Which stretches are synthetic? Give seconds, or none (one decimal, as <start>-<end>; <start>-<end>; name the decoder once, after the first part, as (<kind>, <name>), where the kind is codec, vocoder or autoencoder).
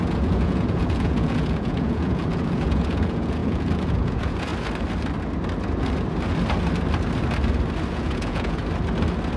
0.0-4.5 (vocoder, Vocos); 7.9-8.6